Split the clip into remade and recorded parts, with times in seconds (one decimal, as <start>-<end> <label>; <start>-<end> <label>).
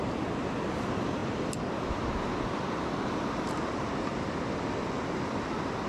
0.0-1.2 recorded; 1.2-4.4 remade; 4.4-5.9 recorded